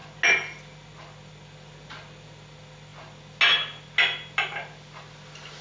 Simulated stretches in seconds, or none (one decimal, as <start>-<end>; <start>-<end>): none